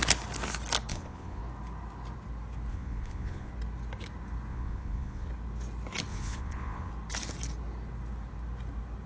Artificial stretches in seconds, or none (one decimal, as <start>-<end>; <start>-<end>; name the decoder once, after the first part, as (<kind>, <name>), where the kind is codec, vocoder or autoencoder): 0.9-1.4 (vocoder, Vocos); 2.7-3.5; 4.5-5.3; 6.1-6.9